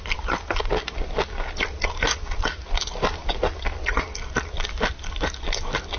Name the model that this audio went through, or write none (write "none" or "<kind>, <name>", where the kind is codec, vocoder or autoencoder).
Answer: none